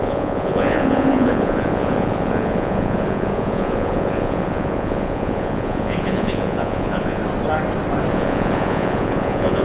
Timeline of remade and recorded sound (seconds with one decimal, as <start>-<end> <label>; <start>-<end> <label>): 0.0-7.2 remade; 7.2-8.1 recorded; 8.1-9.6 remade